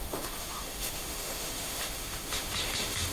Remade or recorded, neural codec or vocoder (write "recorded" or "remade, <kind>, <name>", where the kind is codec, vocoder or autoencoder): remade, autoencoder, DAC-VAE